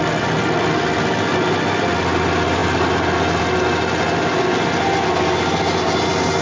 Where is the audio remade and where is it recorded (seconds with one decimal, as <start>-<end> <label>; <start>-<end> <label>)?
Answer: 0.0-6.4 recorded